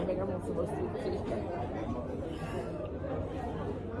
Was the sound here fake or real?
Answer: real